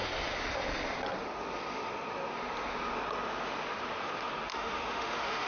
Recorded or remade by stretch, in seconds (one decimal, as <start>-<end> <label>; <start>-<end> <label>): 0.0-4.5 recorded; 4.5-5.5 remade